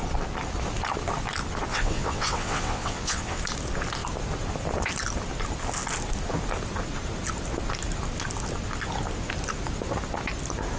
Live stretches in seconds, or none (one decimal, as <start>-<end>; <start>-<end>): 0.0-1.7; 3.4-10.8